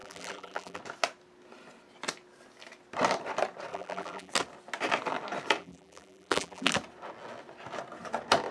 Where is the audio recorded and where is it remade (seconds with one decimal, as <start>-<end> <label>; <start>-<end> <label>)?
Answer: 0.0-0.8 remade; 0.8-3.7 recorded; 3.7-4.3 remade; 4.3-5.6 recorded; 5.6-6.7 remade; 6.7-8.5 recorded